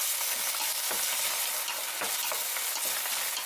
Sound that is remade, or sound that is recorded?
recorded